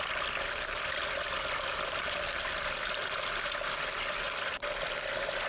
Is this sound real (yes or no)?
yes